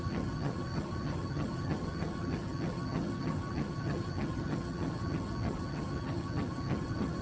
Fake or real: fake